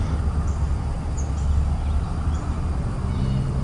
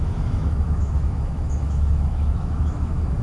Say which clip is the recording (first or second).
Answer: first